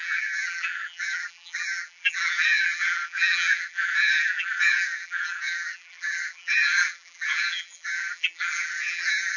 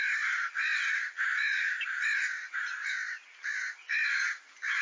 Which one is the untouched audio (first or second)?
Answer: second